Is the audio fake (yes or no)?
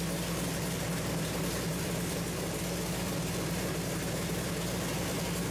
no